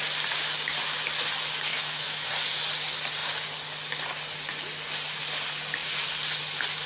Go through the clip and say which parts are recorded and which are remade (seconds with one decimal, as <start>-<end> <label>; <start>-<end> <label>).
0.0-1.7 recorded; 1.7-2.3 remade; 2.3-6.9 recorded